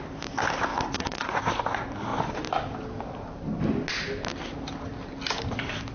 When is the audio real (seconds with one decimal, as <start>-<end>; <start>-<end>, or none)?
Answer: 0.0-0.7; 1.4-5.9